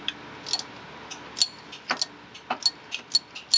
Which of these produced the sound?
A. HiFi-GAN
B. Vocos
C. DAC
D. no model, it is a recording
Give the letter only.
D